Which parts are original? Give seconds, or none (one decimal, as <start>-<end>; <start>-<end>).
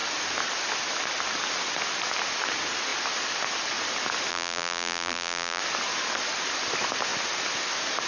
0.0-4.3; 5.6-8.1